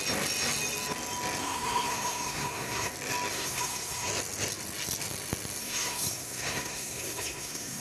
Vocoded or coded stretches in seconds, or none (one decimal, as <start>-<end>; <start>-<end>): 1.4-2.9; 3.3-4.1; 5.6-7.8